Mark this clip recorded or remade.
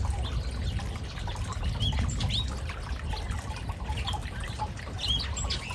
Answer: recorded